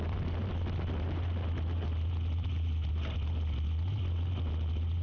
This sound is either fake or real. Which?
real